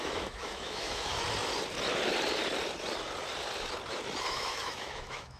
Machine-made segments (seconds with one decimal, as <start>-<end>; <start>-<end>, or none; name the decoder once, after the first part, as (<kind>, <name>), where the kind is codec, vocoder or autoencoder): 0.0-1.1 (autoencoder, DAC-VAE); 4.3-5.4